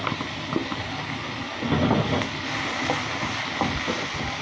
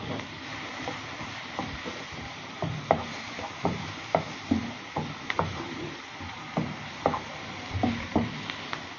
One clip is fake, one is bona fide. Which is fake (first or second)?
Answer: second